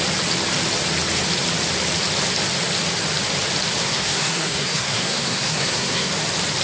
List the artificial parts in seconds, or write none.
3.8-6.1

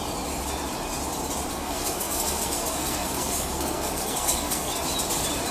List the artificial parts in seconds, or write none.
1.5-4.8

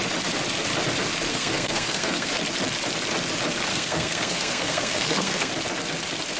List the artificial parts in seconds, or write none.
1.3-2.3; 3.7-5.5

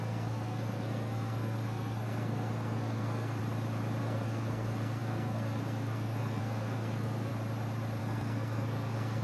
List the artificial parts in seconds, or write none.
0.0-3.4; 4.0-7.3; 8.0-9.2

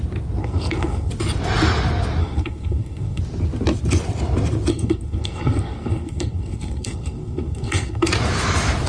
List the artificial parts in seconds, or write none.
0.4-1.1; 2.2-3.2; 4.7-8.1